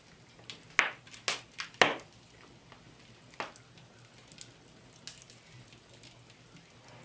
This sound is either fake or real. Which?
real